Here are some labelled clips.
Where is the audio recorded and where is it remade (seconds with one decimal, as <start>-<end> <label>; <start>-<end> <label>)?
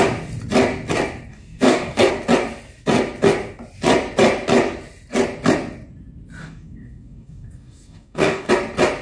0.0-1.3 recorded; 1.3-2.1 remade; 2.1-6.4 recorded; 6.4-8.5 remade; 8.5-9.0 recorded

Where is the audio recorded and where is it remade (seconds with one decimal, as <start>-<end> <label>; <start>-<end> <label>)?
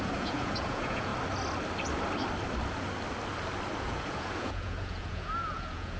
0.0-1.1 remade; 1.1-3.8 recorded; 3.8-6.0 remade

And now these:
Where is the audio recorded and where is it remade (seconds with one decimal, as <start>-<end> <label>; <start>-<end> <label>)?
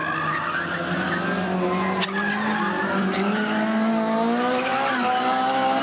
0.0-5.8 recorded